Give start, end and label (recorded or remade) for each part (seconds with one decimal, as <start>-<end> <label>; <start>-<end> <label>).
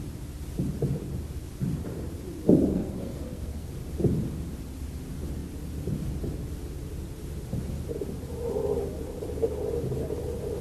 0.0-2.7 recorded; 2.7-3.7 remade; 3.7-10.6 recorded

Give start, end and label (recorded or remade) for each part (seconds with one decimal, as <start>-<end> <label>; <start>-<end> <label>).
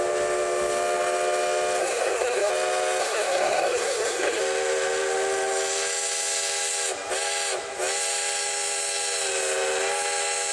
0.0-1.8 recorded; 1.8-2.5 remade; 2.5-3.0 recorded; 3.0-4.4 remade; 4.4-10.5 recorded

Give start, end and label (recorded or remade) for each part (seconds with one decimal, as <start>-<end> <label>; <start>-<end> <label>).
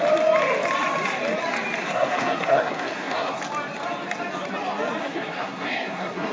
0.0-1.8 recorded; 1.8-3.4 remade; 3.4-5.0 recorded; 5.0-6.3 remade